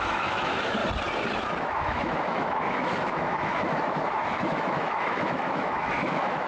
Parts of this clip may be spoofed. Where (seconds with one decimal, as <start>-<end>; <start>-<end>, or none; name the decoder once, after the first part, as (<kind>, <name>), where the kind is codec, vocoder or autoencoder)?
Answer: 0.0-0.8 (autoencoder, DAC-VAE); 1.6-6.5